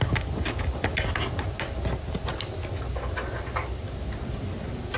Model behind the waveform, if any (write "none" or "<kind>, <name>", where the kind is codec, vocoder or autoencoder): none